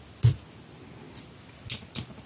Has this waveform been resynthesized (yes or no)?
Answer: no